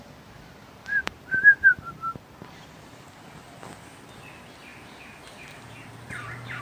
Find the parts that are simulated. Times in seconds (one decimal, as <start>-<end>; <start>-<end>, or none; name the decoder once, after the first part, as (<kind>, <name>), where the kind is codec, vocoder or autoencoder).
0.6-3.2 (vocoder, BigVGAN v2); 4.7-6.6